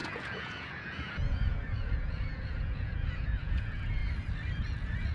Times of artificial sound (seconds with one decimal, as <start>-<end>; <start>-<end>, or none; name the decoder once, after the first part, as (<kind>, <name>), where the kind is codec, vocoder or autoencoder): 0.0-4.0 (vocoder, Vocos); 4.6-5.1